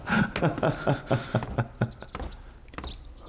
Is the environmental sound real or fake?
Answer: real